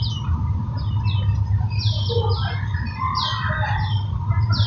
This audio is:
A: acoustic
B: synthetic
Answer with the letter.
A